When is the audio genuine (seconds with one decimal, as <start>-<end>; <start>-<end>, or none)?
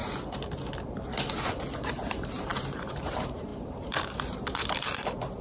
0.0-1.8